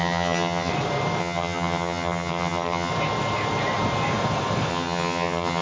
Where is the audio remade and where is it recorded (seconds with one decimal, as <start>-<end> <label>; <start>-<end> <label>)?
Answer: 0.0-0.7 remade; 0.7-1.2 recorded; 1.2-2.9 remade; 2.9-4.7 recorded; 4.7-5.6 remade